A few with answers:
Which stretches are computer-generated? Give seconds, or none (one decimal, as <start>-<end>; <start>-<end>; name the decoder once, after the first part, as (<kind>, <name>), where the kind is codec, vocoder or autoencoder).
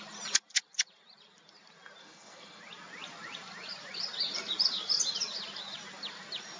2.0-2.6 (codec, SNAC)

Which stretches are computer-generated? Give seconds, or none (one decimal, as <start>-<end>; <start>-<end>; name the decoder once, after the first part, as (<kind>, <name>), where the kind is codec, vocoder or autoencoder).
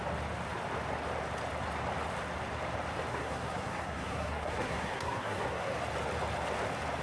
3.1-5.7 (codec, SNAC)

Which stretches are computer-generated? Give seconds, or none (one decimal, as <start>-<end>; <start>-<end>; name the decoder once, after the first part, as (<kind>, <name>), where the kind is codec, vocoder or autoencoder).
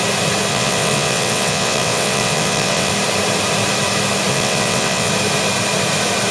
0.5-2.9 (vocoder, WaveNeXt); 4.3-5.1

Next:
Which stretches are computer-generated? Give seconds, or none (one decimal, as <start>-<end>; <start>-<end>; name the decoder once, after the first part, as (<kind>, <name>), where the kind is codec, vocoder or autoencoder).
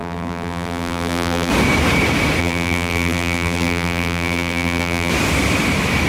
0.0-1.5 (vocoder, BigVGAN v2); 2.4-5.1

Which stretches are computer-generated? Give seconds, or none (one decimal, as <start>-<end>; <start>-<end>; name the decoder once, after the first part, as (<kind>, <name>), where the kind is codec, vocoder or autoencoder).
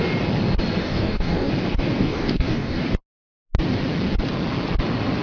0.8-1.5 (codec, DAC); 2.0-2.8